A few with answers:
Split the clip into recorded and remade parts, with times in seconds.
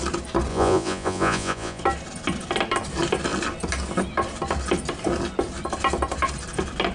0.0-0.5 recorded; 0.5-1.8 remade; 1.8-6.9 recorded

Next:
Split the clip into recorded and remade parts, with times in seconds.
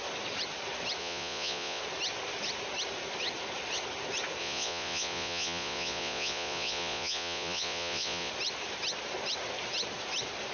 0.0-1.0 recorded; 1.0-1.8 remade; 1.8-4.4 recorded; 4.4-8.3 remade; 8.3-10.5 recorded